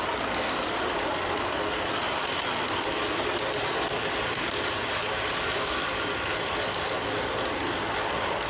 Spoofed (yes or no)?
no